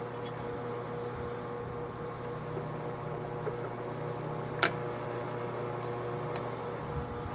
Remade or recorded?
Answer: recorded